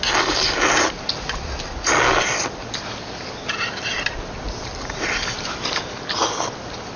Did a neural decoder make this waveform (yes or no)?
no